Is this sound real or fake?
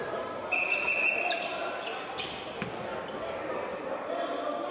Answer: real